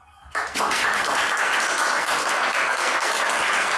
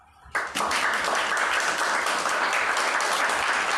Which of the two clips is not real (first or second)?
first